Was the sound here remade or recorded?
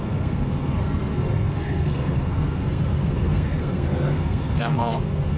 remade